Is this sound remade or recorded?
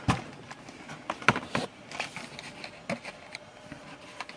recorded